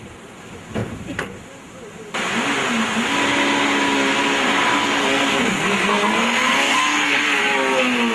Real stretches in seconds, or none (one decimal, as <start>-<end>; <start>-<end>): 0.0-4.7; 7.4-8.1